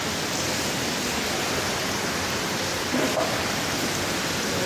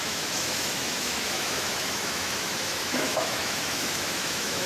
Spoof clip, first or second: second